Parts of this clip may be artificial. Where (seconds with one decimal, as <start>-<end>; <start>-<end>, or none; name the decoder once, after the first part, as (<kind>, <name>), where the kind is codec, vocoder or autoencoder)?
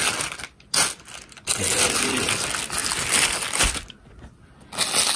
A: none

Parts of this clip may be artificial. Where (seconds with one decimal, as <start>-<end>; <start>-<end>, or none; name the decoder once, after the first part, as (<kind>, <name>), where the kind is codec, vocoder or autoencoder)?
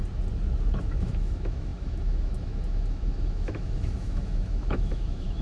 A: 0.8-5.4 (autoencoder, DAC-VAE)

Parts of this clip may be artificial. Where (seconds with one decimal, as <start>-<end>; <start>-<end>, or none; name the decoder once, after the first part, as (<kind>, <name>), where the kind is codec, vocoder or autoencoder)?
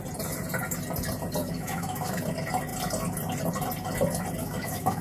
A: 1.4-2.2 (autoencoder, DAC-VAE); 4.4-5.0